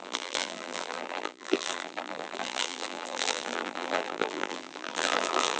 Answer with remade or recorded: remade